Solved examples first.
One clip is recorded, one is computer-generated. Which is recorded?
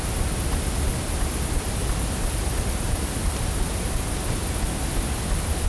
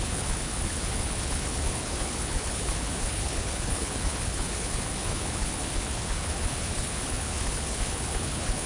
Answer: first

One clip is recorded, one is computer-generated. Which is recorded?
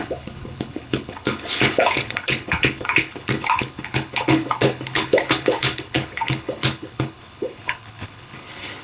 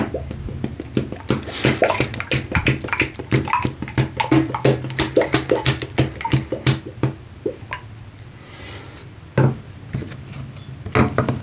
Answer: second